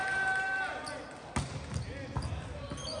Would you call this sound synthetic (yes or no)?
no